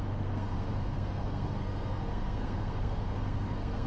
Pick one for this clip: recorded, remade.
remade